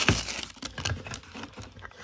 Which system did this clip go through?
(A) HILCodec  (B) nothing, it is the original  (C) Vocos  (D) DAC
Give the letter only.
B